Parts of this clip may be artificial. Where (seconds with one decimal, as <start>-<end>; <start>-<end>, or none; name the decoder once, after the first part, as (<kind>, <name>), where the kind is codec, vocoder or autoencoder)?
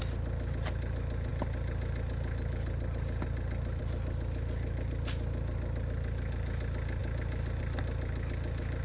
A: none